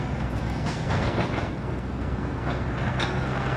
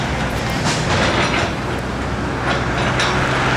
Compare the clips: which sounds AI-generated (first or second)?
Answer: first